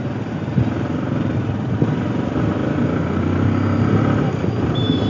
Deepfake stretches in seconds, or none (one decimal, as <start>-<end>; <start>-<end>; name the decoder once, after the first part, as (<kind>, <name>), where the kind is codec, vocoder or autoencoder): none